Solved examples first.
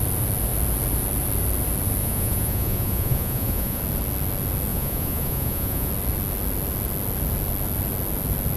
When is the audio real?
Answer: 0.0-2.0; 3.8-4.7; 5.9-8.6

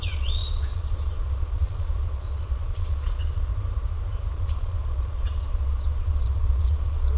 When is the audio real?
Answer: 3.5-4.3

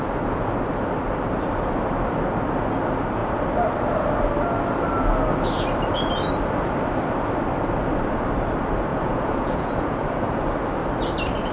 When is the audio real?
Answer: 0.0-8.9; 10.5-11.5

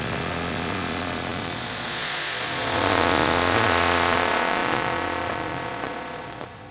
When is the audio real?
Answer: none

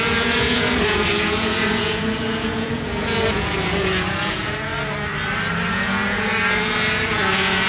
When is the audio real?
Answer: 4.7-5.7